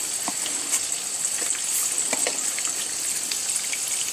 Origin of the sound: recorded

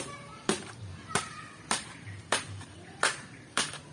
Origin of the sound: remade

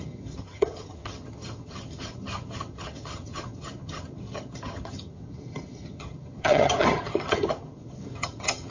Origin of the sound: remade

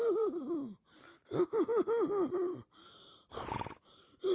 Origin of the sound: recorded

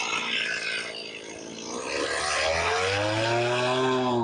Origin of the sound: recorded